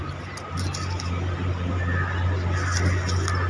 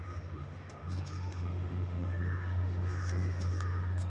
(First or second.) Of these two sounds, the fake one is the second